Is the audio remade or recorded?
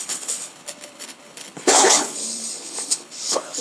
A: remade